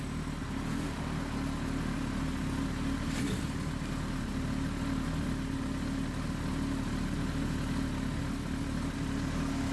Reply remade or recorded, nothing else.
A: recorded